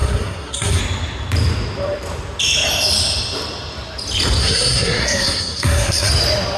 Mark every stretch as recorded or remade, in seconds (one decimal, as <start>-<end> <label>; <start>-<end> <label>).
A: 0.0-0.8 remade; 0.8-4.4 recorded; 4.4-6.1 remade; 6.1-6.6 recorded

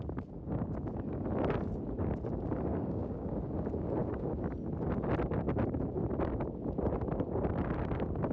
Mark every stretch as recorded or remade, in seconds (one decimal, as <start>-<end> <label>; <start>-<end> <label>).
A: 0.0-2.7 recorded; 2.7-3.3 remade; 3.3-8.3 recorded